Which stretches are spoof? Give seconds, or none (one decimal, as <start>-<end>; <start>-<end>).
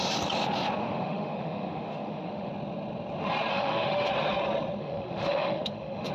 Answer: 0.8-2.5; 3.5-4.1; 4.8-6.1